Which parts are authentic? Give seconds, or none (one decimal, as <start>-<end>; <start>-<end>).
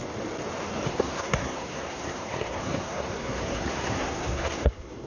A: 0.0-0.9